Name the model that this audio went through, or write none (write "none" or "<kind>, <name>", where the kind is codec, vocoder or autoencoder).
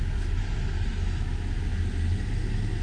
none